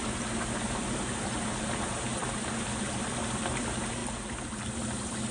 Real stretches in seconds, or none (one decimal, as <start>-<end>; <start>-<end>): 2.2-3.5; 4.0-5.3